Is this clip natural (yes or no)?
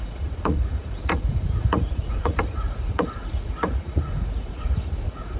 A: no